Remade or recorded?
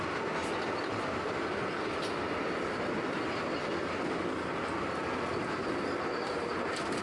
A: recorded